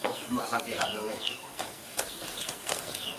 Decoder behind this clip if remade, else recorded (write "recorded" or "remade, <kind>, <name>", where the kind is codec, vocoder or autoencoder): remade, codec, SNAC